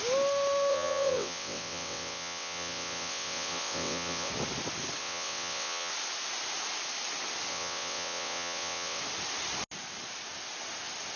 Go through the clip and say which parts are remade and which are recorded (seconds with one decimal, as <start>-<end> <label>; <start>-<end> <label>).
0.0-0.7 recorded; 0.7-4.3 remade; 4.3-5.0 recorded; 5.0-5.9 remade; 5.9-7.5 recorded; 7.5-9.0 remade; 9.0-11.2 recorded